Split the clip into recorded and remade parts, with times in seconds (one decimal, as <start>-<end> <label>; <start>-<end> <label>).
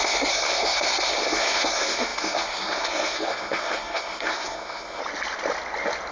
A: 0.0-5.0 remade; 5.0-6.1 recorded